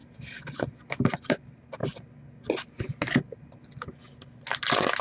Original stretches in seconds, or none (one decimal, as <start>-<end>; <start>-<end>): 1.8-5.0